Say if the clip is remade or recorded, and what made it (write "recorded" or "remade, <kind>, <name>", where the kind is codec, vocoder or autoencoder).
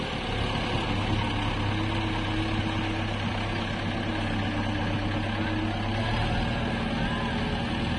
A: recorded